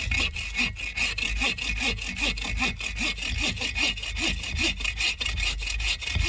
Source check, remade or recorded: recorded